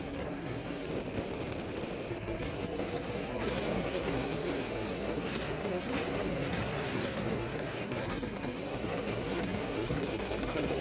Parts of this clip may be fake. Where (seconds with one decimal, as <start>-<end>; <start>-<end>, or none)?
0.0-0.9; 2.1-10.8